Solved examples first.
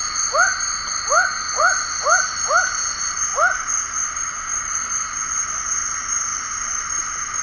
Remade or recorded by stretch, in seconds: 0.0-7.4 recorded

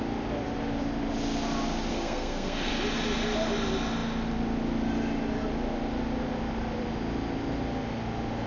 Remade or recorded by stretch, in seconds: 0.0-1.9 recorded; 1.9-2.7 remade; 2.7-8.5 recorded

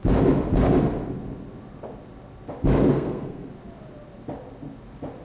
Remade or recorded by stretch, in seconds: 0.0-2.9 recorded; 2.9-3.5 remade; 3.5-5.2 recorded

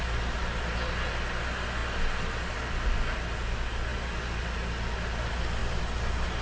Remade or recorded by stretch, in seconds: 0.0-6.4 recorded

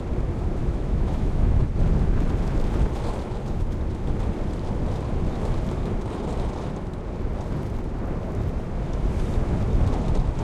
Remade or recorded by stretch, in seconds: 0.0-0.6 recorded; 0.6-1.7 remade; 1.7-10.4 recorded